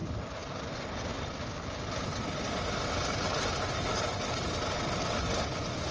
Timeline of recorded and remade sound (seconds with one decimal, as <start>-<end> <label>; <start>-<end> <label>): 0.0-5.9 recorded

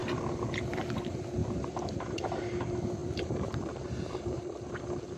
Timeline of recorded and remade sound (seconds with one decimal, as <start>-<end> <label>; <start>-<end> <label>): 0.0-0.8 remade; 0.8-1.4 recorded; 1.4-2.2 remade; 2.2-3.0 recorded; 3.0-4.7 remade; 4.7-5.2 recorded

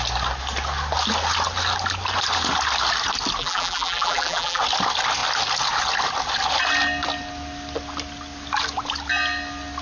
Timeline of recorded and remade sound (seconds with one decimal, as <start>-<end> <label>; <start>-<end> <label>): 0.0-3.4 recorded; 3.4-4.6 remade; 4.6-9.8 recorded

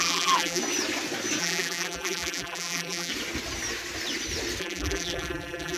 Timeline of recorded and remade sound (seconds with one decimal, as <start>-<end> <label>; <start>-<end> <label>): 0.0-0.6 remade; 0.6-1.4 recorded; 1.4-3.1 remade; 3.1-4.6 recorded; 4.6-5.8 remade